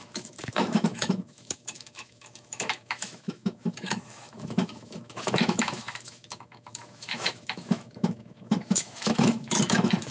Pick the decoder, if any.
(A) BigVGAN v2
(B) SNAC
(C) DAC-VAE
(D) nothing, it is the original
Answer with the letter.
C